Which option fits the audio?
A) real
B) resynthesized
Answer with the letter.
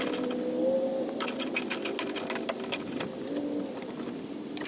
A